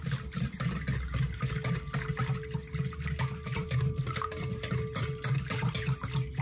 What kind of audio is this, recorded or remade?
recorded